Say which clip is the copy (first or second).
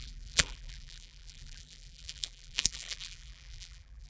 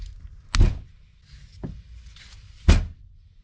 first